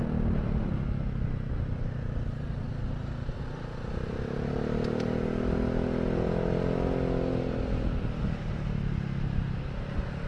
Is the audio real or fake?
real